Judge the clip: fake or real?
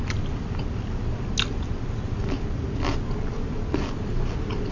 real